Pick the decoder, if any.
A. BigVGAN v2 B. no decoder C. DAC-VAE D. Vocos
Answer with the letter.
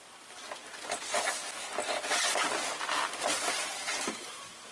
B